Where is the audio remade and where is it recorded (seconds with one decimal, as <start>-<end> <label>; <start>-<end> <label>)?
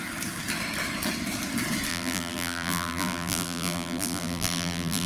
0.0-1.9 recorded; 1.9-5.1 remade